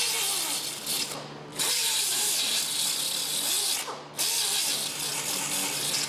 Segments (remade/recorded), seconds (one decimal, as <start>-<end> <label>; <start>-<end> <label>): 0.0-1.5 recorded; 1.5-2.6 remade; 2.6-6.1 recorded